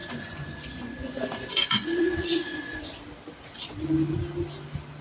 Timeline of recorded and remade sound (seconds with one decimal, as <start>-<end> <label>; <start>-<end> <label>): 0.0-3.0 remade; 3.0-5.0 recorded